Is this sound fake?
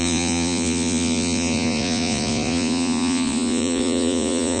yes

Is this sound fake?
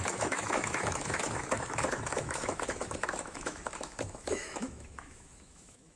yes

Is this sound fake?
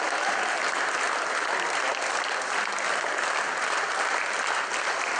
no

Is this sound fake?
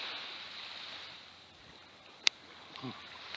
no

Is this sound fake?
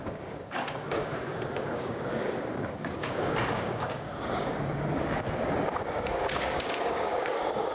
yes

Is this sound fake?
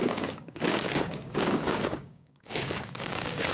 yes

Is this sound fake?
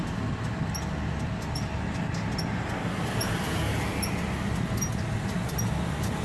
no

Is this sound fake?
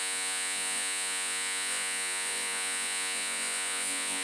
yes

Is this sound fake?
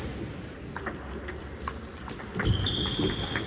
no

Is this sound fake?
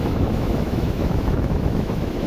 yes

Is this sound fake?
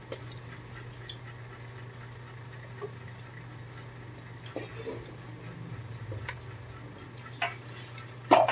no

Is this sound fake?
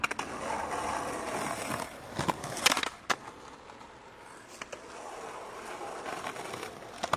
no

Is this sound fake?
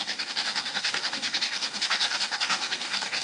yes